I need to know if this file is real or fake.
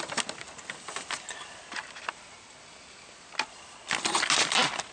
real